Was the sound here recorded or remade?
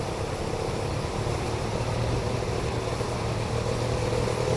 recorded